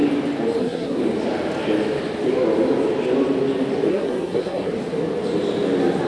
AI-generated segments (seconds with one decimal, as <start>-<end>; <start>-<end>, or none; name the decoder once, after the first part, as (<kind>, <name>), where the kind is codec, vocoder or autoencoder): 0.6-1.0 (codec, SNAC); 3.9-4.7